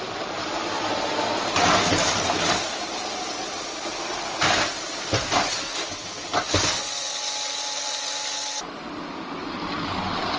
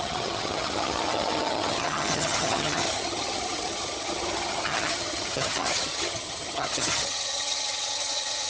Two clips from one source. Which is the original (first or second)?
first